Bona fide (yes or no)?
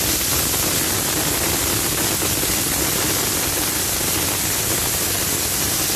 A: yes